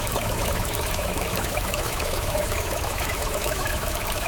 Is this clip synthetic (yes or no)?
yes